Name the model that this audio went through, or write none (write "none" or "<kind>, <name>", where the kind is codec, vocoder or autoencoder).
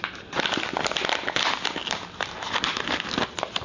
none